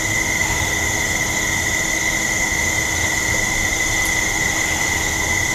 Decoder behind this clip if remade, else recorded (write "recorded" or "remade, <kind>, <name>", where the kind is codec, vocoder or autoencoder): recorded